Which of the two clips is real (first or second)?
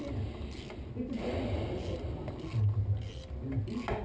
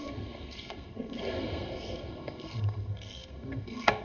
first